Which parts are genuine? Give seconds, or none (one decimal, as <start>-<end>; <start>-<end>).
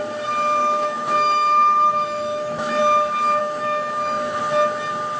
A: 0.0-0.6; 2.8-3.4; 4.4-5.2